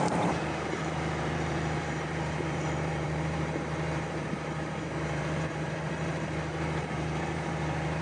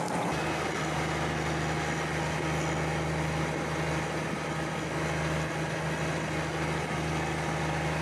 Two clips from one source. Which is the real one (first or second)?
second